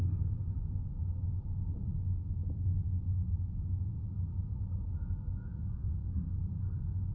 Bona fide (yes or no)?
yes